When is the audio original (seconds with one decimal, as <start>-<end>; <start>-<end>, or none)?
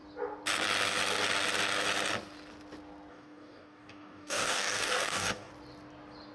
0.0-3.1; 5.5-6.3